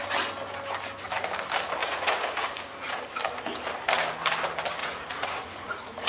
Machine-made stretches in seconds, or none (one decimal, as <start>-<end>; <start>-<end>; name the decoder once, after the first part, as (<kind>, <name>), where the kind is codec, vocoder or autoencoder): 1.8-3.0 (vocoder, Vocos); 4.8-6.1